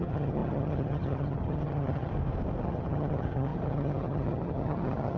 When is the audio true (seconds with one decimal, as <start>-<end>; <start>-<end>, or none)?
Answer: 2.1-2.6